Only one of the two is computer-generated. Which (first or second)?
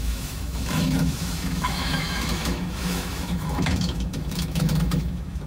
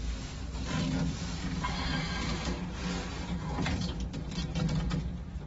first